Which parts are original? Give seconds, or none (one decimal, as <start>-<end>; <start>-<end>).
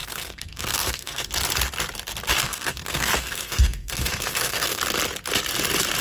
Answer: 1.3-2.4; 4.8-6.0